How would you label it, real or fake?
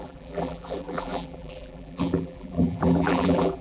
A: fake